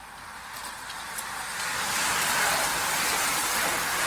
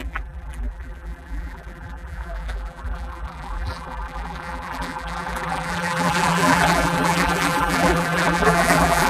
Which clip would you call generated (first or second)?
second